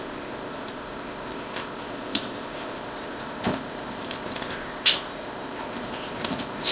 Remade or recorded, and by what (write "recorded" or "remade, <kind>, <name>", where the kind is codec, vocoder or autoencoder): remade, codec, ZipCodec